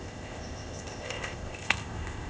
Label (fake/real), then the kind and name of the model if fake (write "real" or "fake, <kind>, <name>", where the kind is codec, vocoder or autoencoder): fake, codec, ZipCodec